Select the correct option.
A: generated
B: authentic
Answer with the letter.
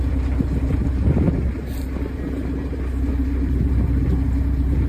B